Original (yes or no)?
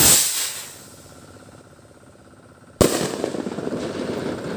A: yes